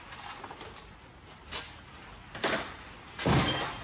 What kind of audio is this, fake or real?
real